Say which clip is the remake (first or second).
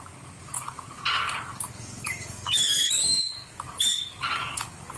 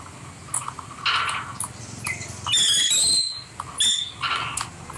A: first